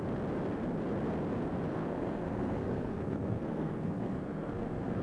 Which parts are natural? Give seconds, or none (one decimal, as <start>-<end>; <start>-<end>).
0.0-1.7